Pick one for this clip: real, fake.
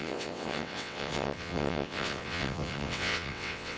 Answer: fake